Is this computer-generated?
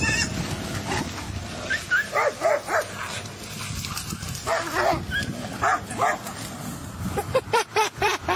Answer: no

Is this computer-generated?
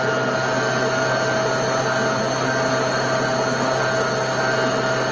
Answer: no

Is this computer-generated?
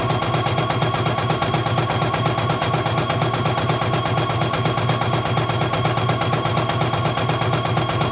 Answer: no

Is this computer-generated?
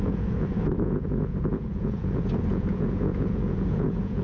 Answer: yes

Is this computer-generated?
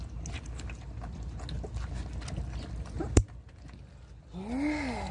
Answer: no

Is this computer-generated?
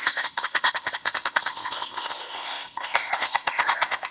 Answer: yes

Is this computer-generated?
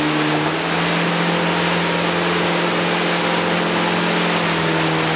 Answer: no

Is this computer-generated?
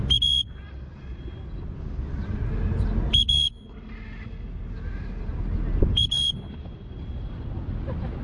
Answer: no